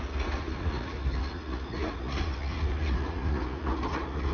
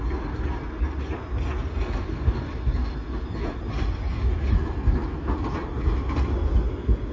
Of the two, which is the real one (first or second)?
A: second